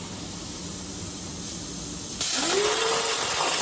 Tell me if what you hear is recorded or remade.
recorded